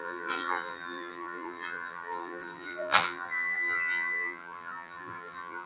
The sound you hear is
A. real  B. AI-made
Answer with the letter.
B